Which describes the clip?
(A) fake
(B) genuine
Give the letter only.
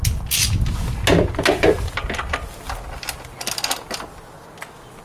B